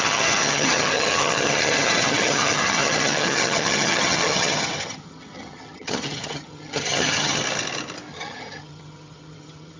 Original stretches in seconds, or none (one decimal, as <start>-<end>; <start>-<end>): 7.4-8.1